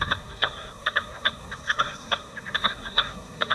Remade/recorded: remade